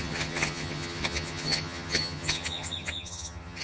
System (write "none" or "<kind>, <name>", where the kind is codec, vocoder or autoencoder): vocoder, HiFi-GAN